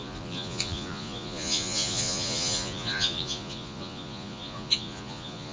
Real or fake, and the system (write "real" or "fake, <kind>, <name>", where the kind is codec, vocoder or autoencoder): fake, vocoder, Vocos